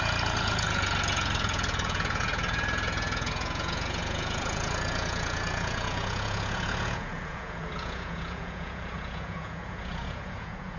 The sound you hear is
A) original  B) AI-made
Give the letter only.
B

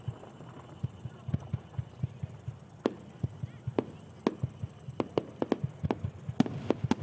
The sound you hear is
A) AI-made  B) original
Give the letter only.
B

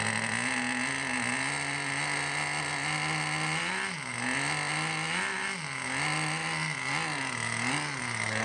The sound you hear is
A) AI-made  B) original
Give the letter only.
B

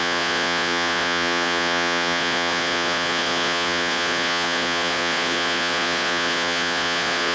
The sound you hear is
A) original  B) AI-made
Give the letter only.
B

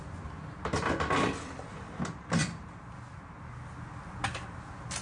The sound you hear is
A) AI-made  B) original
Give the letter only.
B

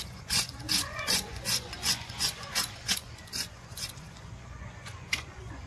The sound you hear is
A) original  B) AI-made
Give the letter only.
B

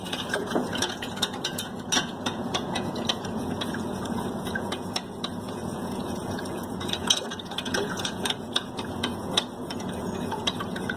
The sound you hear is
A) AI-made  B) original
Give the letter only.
A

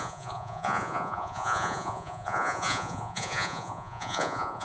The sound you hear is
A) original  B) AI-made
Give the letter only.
B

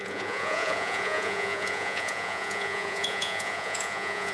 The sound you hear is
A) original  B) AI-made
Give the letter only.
B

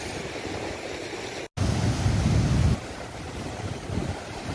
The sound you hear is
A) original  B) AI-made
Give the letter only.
A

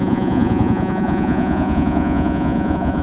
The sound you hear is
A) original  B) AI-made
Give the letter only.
B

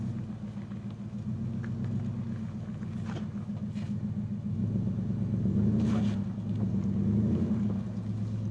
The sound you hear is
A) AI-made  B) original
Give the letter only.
B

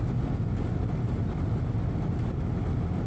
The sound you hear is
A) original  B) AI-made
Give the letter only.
A